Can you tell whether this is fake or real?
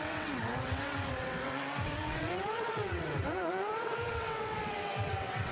fake